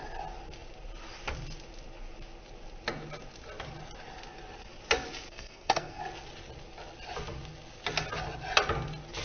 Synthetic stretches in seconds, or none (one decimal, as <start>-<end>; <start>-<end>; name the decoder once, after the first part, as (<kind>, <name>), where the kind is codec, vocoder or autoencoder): 5.3-6.0 (codec, SNAC)